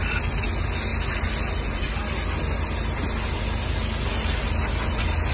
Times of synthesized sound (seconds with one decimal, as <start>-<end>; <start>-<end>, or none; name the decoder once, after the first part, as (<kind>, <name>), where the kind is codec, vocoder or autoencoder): none